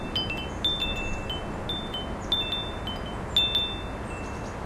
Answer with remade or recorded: recorded